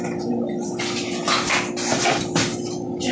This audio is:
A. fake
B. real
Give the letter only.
B